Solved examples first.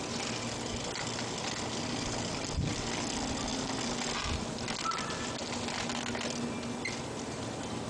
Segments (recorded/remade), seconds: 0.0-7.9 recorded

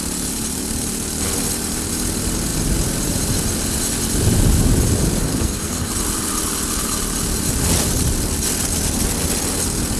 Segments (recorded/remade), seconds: 0.0-5.3 recorded; 5.3-5.9 remade; 5.9-10.0 recorded

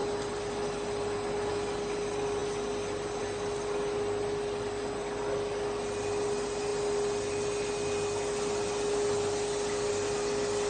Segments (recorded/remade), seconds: 0.0-10.7 recorded

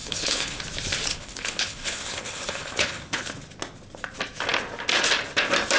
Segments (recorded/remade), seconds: 0.0-0.6 remade; 0.6-1.1 recorded; 1.1-3.2 remade; 3.2-5.8 recorded

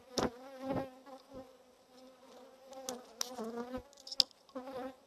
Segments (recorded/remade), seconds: 0.0-5.1 recorded

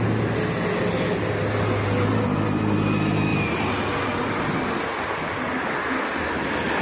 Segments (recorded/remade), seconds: 0.0-6.8 recorded

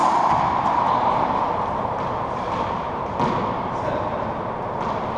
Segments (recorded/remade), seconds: 0.0-3.1 remade; 3.1-5.2 recorded